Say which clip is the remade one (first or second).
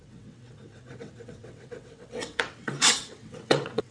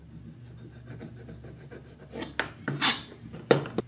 first